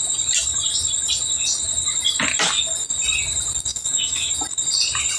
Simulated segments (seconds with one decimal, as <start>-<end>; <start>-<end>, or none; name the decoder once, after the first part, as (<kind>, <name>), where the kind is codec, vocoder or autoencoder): 3.7-4.3 (autoencoder, DAC-VAE)